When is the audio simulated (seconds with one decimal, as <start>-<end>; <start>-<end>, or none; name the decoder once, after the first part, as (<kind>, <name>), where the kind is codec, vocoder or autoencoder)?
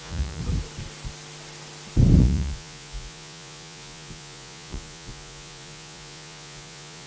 0.0-0.4 (vocoder, Vocos); 2.2-7.1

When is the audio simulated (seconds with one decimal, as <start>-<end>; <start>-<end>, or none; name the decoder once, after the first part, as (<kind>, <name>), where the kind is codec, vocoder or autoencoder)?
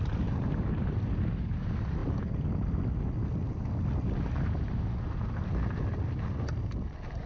none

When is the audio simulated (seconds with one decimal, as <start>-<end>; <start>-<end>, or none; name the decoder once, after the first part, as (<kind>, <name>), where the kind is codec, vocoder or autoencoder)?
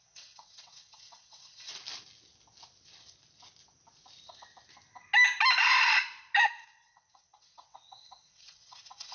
0.0-1.7 (vocoder, WaveNeXt); 6.4-9.1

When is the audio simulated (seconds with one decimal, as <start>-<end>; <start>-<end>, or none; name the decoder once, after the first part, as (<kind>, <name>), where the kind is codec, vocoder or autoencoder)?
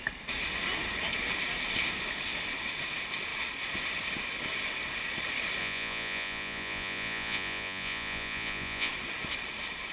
5.6-8.9 (vocoder, Vocos)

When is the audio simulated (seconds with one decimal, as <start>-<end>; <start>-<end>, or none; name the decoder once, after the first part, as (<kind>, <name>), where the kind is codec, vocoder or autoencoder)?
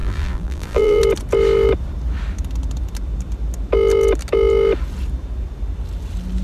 0.0-1.0 (vocoder, BigVGAN v2)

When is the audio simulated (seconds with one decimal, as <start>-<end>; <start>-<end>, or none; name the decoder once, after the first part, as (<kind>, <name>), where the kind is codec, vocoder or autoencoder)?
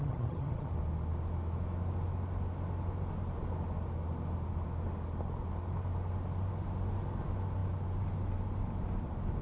0.0-0.7 (vocoder, HiFi-GAN)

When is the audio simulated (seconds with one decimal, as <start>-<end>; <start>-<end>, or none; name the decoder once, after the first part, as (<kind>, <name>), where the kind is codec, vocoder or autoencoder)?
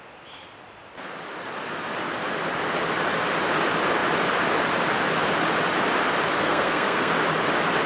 6.4-7.1 (codec, SNAC)